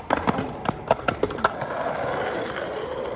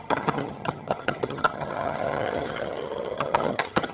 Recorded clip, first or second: first